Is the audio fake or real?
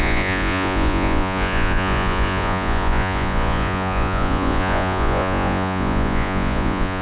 fake